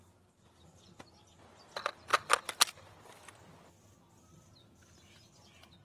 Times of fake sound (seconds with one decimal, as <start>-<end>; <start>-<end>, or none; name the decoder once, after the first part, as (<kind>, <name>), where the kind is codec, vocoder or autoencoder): none